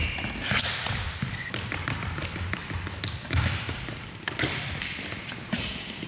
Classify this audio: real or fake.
real